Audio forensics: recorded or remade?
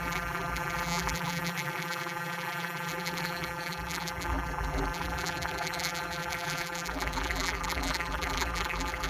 remade